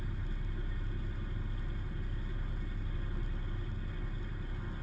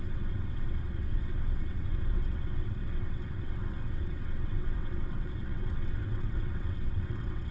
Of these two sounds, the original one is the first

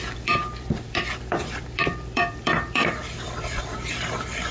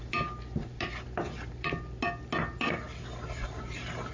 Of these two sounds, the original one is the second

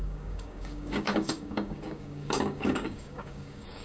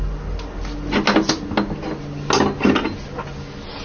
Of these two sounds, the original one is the second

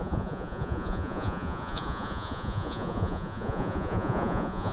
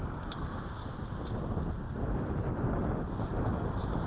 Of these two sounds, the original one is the second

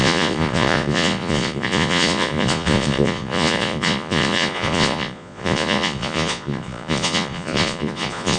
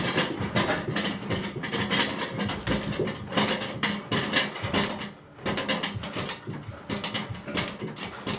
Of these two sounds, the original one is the second